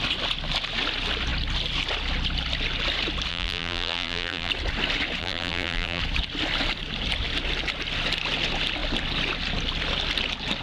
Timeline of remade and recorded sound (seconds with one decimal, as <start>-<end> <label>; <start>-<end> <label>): 0.0-3.3 recorded; 3.3-4.5 remade; 4.5-5.2 recorded; 5.2-6.0 remade; 6.0-10.6 recorded